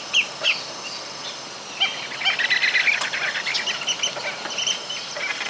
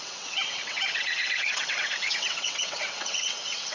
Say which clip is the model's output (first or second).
second